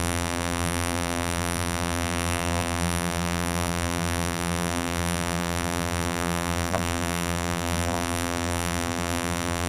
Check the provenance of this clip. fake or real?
fake